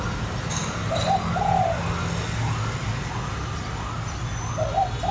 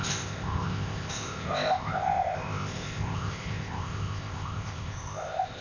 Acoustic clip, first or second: first